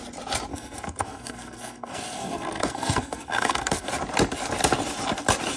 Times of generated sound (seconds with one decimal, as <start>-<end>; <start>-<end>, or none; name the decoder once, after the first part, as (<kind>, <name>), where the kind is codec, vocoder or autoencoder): 0.5-3.9 (codec, SNAC)